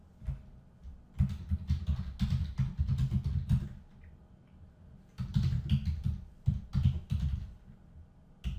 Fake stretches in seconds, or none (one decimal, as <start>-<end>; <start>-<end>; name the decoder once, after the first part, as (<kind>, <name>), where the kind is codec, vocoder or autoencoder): none